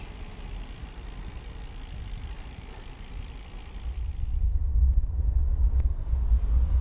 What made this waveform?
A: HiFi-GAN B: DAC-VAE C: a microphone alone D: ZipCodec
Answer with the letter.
C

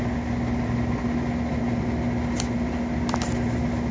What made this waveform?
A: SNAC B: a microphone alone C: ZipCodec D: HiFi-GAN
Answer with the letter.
B